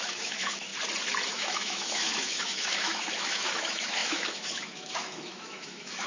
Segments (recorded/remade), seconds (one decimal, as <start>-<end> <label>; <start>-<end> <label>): 0.0-0.7 remade; 0.7-1.3 recorded; 1.3-6.1 remade